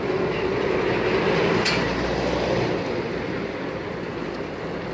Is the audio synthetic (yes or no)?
no